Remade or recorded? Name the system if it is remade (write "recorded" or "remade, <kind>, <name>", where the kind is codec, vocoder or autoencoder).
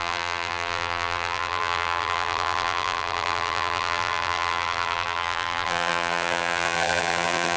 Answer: remade, vocoder, BigVGAN v2